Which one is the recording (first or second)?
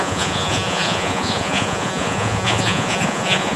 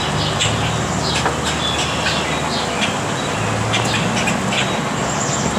second